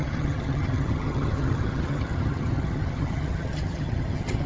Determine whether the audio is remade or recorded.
remade